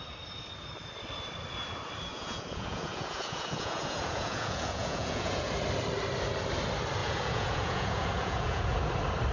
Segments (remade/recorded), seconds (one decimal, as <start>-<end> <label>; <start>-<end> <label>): 0.0-2.1 recorded; 2.1-5.5 remade; 5.5-7.0 recorded; 7.0-8.9 remade; 8.9-9.3 recorded